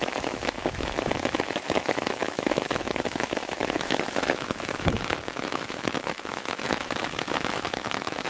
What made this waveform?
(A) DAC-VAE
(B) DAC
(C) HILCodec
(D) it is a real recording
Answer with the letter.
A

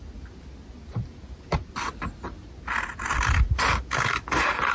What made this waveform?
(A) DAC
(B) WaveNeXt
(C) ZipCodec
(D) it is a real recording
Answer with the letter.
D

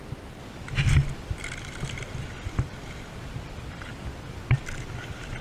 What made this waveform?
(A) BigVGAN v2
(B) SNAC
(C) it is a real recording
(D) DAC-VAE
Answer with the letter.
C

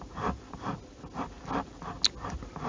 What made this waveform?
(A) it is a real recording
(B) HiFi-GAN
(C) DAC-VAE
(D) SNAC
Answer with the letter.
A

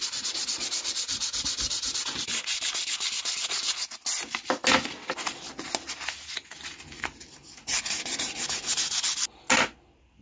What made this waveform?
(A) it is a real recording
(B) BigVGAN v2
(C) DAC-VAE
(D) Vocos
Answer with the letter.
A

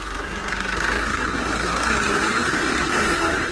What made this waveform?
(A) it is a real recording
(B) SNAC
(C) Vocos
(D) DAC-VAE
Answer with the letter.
B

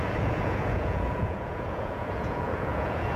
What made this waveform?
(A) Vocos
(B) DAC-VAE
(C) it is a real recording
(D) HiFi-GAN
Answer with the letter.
A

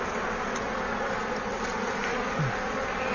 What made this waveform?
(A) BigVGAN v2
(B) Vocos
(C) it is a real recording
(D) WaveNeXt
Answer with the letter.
C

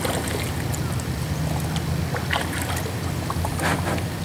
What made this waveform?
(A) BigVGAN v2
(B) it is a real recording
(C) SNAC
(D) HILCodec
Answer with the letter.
B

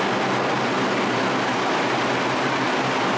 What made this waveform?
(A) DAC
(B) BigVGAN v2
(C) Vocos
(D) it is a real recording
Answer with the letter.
D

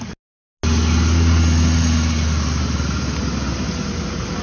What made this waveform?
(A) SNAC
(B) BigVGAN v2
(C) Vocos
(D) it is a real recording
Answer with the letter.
D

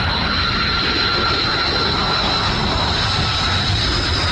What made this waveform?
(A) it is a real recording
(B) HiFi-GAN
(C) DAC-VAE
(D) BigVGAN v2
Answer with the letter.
D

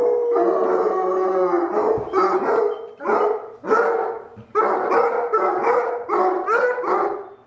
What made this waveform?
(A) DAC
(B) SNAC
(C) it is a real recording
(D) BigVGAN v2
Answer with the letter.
C